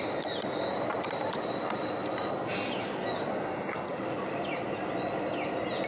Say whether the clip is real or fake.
real